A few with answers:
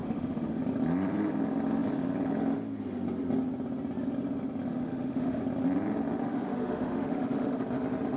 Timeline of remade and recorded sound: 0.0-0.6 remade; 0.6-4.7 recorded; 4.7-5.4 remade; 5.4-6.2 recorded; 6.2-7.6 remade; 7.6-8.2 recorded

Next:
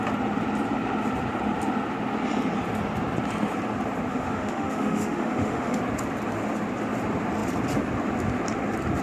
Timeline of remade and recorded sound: 0.0-4.1 recorded; 4.1-5.8 remade; 5.8-9.0 recorded

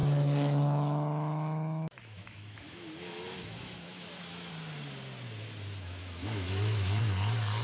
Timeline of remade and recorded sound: 0.0-4.5 remade; 4.5-6.0 recorded; 6.0-7.0 remade; 7.0-7.6 recorded

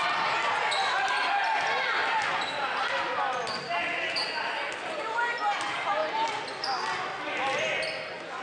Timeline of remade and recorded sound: 0.0-8.4 recorded

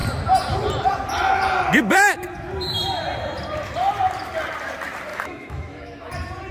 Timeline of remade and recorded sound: 0.0-5.1 recorded; 5.1-6.1 remade; 6.1-6.5 recorded